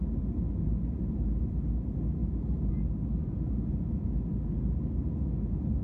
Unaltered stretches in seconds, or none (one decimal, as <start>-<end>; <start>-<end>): 0.0-3.2; 4.1-5.8